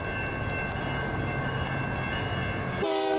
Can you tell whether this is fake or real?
real